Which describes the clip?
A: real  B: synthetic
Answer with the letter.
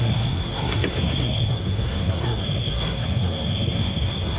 B